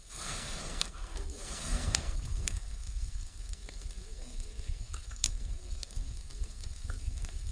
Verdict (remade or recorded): remade